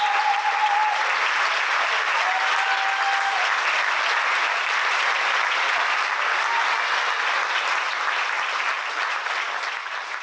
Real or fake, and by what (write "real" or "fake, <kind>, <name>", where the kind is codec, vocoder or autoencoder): real